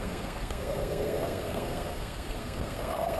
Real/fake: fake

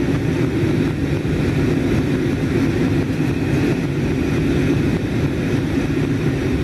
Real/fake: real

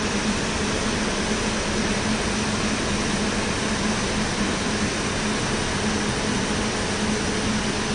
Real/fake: real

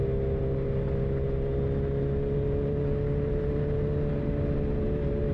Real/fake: real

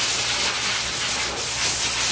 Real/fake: real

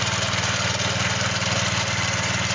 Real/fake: real